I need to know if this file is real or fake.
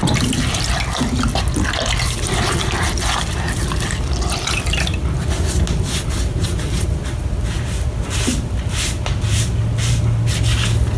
real